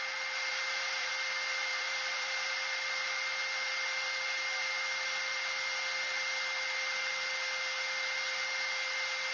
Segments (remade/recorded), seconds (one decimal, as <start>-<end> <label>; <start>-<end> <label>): 0.0-0.5 recorded; 0.5-1.1 remade; 1.1-1.7 recorded; 1.7-2.5 remade; 2.5-9.3 recorded